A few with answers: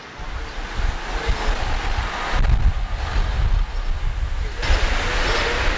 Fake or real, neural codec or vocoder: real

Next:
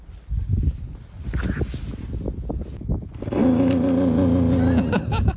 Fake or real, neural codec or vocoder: real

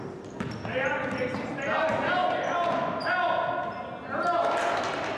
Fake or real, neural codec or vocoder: real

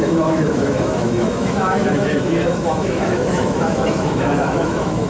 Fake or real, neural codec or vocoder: fake, autoencoder, DAC-VAE